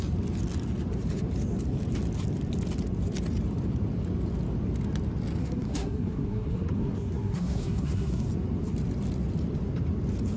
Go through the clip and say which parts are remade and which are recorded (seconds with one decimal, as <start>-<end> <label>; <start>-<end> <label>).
0.0-5.4 recorded; 5.4-8.3 remade; 8.3-10.4 recorded